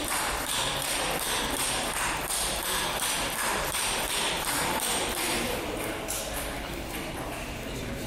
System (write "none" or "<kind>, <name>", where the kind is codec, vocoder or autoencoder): vocoder, BigVGAN v2